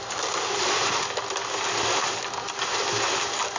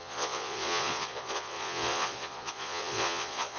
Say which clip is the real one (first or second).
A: first